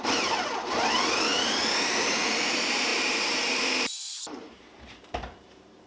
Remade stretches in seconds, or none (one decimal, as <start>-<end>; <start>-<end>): 0.0-1.3; 2.2-5.9